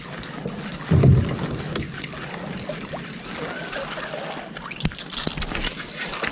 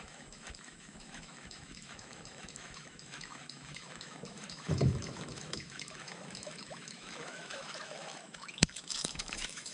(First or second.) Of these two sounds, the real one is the first